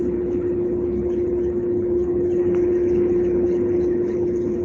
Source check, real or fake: fake